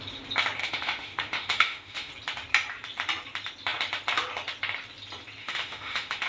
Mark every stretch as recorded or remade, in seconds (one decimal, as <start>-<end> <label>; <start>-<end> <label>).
0.0-0.6 recorded; 0.6-2.1 remade; 2.1-5.4 recorded; 5.4-6.3 remade